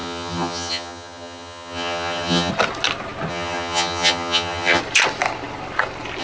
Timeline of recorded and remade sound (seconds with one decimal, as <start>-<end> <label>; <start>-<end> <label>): 0.0-2.5 remade; 2.5-3.3 recorded; 3.3-4.8 remade; 4.8-6.2 recorded